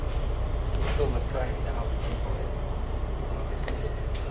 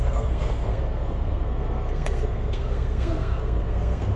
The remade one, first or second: second